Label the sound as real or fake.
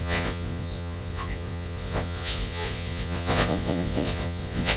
fake